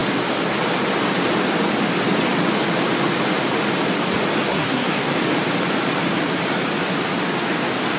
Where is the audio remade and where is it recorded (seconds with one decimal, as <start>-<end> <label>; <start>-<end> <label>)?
0.0-4.5 recorded; 4.5-5.1 remade; 5.1-8.0 recorded